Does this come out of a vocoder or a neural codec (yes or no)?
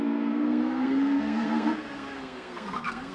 yes